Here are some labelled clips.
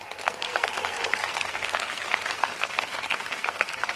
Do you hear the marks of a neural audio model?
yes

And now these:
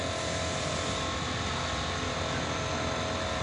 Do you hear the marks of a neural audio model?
no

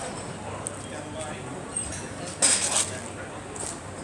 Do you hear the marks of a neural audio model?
no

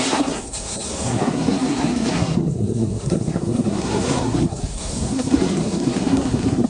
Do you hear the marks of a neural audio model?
yes